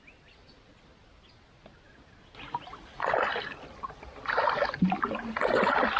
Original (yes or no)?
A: yes